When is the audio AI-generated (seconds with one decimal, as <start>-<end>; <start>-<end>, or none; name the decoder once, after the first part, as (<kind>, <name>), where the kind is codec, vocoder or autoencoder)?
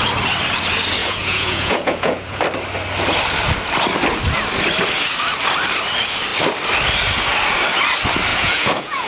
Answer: 1.0-2.4 (vocoder, Vocos); 8.3-9.1